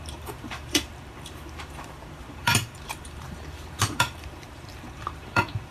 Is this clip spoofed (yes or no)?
yes